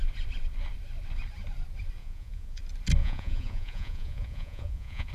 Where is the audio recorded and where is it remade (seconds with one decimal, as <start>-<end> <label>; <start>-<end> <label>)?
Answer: 0.0-2.0 recorded; 2.0-2.6 remade; 2.6-3.0 recorded; 3.0-5.1 remade